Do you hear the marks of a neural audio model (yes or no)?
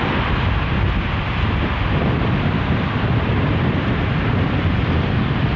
no